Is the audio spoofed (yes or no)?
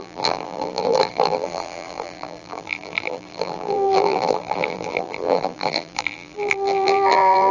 yes